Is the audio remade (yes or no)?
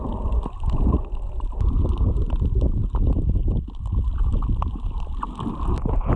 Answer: no